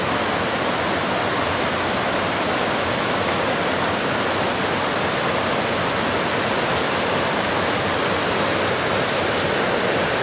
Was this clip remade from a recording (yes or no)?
no